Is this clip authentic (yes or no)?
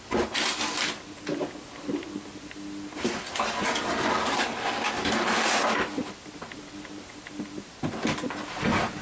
yes